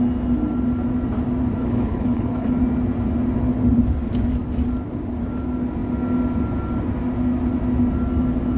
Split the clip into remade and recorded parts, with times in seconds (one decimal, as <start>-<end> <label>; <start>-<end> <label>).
0.0-1.6 recorded; 1.6-2.5 remade; 2.5-8.6 recorded